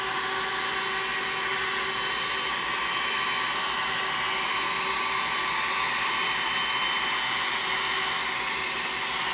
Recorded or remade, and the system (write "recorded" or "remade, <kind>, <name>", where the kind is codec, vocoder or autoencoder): recorded